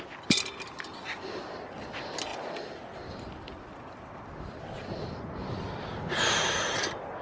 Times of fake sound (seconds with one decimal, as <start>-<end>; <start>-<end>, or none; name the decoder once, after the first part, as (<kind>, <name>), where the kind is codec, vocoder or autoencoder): none